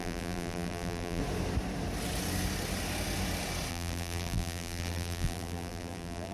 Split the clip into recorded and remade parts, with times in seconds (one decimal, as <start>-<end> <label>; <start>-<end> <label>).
0.0-1.2 remade; 1.2-3.7 recorded; 3.7-6.3 remade